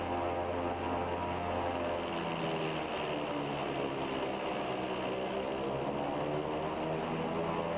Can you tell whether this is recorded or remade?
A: recorded